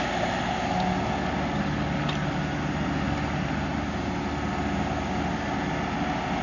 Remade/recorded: recorded